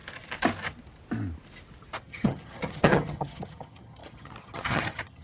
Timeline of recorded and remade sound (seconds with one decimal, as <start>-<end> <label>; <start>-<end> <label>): 0.0-2.0 recorded; 2.0-5.2 remade